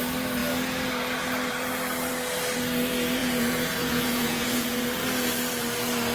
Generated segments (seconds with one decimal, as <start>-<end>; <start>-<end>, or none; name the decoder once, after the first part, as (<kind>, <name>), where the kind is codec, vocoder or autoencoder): 3.2-4.9 (vocoder, Vocos)